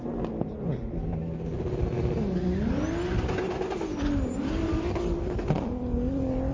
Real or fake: real